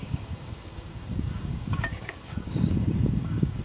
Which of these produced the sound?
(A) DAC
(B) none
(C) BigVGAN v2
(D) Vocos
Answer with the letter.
A